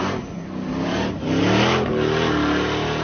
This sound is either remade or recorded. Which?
recorded